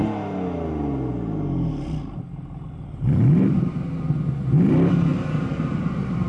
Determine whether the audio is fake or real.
real